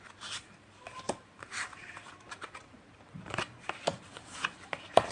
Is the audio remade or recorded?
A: remade